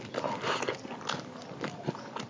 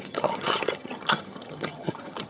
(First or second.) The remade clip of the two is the second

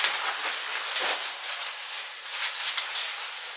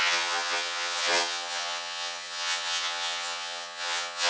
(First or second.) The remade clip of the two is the second